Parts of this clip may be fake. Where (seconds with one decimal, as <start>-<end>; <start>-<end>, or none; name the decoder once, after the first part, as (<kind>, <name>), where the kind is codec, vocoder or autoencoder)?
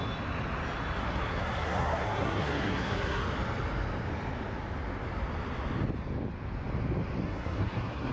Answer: 1.0-3.2 (codec, SNAC); 7.2-8.1